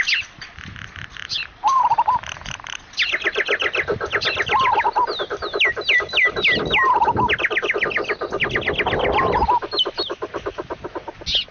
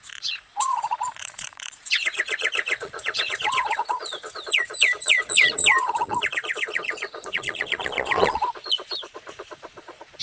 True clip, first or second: first